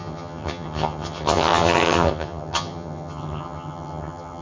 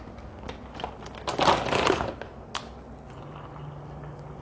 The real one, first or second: second